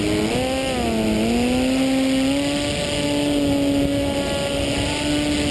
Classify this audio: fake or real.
real